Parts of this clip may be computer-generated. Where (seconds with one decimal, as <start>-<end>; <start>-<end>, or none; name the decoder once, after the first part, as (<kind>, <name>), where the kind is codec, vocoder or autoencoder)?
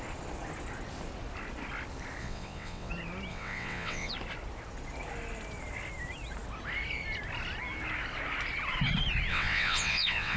2.2-2.9 (vocoder, WaveNeXt); 3.3-4.1; 9.3-10.4